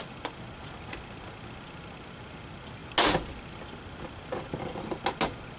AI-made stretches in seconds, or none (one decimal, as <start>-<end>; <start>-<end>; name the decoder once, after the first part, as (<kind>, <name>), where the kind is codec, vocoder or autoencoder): none